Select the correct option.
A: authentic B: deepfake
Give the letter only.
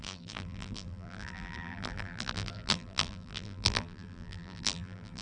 B